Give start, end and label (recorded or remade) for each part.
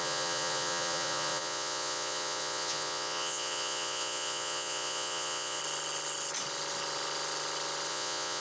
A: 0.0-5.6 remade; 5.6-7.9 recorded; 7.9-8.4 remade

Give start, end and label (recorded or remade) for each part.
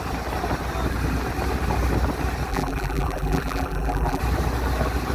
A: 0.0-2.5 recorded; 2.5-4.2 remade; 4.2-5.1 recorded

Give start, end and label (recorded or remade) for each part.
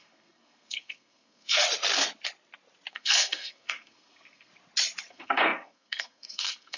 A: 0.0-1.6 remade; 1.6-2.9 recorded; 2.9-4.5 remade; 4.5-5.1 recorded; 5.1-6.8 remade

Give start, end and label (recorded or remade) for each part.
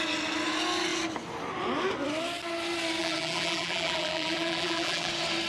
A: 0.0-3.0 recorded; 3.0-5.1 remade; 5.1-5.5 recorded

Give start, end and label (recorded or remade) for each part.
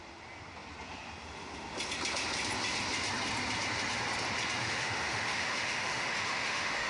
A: 0.0-4.6 recorded; 4.6-6.9 remade